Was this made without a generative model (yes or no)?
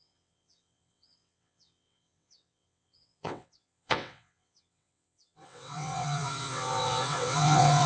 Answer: no